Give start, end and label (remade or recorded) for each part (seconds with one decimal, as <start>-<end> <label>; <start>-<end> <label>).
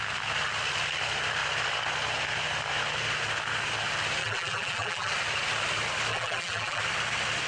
0.0-4.2 recorded; 4.2-5.1 remade; 5.1-6.1 recorded; 6.1-6.8 remade; 6.8-7.5 recorded